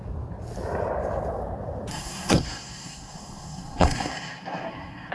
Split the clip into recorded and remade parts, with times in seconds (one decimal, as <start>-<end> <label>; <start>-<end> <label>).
0.0-1.9 recorded; 1.9-5.1 remade